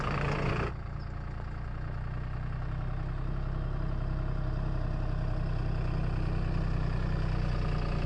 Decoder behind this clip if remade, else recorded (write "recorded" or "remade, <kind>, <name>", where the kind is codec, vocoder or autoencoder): recorded